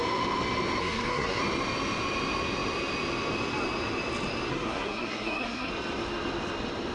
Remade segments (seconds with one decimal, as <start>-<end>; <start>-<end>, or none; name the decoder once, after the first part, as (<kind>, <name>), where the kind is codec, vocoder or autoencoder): 0.8-1.4 (codec, SNAC); 4.5-5.7